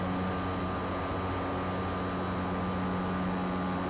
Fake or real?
real